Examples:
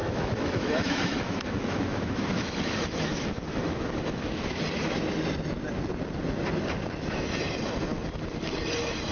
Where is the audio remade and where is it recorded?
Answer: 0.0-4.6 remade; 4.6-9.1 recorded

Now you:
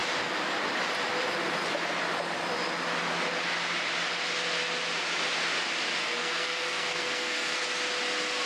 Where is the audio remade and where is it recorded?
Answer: 0.0-6.0 recorded; 6.0-7.6 remade; 7.6-8.5 recorded

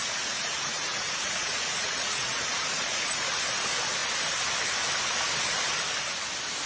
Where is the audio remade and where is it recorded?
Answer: 0.0-3.4 remade; 3.4-6.7 recorded

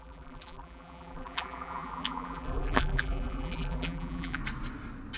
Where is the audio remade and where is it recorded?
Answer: 0.0-4.4 remade; 4.4-5.2 recorded

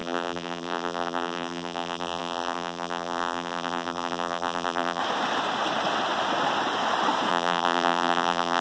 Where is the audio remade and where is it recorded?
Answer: 0.0-5.0 remade; 5.0-7.3 recorded; 7.3-8.6 remade

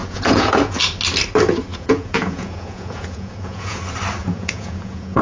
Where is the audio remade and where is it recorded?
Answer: 0.0-0.8 remade; 0.8-1.7 recorded; 1.7-3.8 remade; 3.8-4.2 recorded; 4.2-5.2 remade